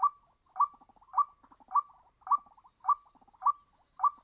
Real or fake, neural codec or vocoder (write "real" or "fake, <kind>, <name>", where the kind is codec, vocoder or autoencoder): real